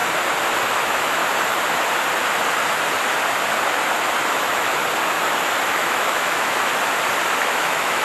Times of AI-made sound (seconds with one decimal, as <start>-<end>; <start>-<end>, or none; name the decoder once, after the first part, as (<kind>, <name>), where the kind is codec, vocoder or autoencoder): 0.6-1.2 (autoencoder, DAC-VAE); 4.3-4.8; 5.7-6.7; 7.4-8.0